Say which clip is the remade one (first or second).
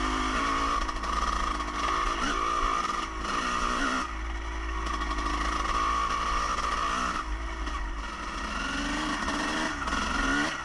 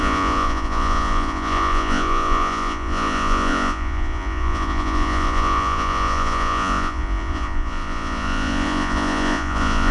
second